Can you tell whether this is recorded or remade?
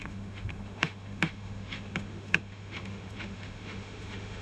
remade